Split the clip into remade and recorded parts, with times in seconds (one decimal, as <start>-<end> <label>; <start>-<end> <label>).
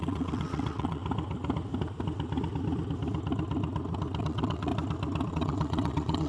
0.0-1.0 remade; 1.0-4.2 recorded; 4.2-4.7 remade; 4.7-5.3 recorded; 5.3-6.3 remade